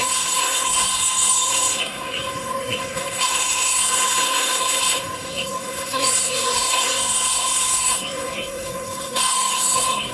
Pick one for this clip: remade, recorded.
remade